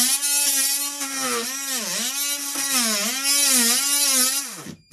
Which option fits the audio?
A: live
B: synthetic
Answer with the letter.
A